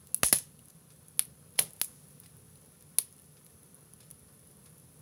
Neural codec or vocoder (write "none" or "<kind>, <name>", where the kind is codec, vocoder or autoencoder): none